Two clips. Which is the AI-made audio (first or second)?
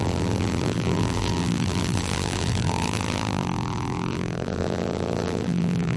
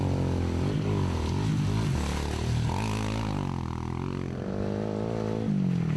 first